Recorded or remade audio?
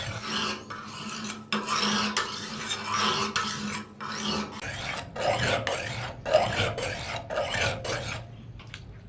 recorded